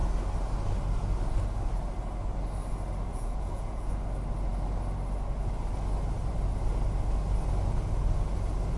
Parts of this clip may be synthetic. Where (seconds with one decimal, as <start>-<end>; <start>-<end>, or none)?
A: 3.1-3.9